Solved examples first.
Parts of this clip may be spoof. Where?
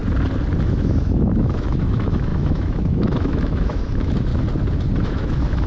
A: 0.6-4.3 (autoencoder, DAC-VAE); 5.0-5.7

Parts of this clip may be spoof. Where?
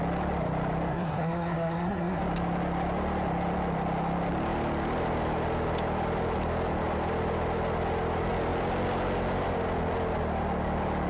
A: 0.9-2.2 (codec, SNAC)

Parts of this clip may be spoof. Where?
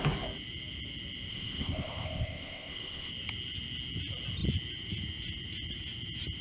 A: 1.3-3.1 (codec, ZipCodec)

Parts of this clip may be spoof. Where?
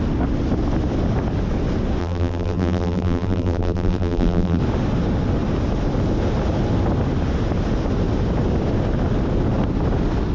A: 2.0-4.6 (vocoder, BigVGAN v2)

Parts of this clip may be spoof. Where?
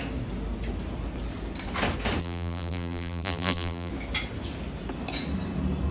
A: 2.2-3.9 (vocoder, BigVGAN v2)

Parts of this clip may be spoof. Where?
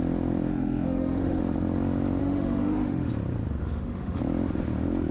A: 0.5-1.4 (autoencoder, DAC-VAE); 2.2-3.1; 3.6-4.2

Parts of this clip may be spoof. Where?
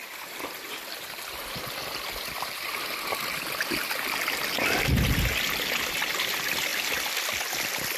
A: 0.0-1.6 (vocoder, BigVGAN v2); 6.7-7.5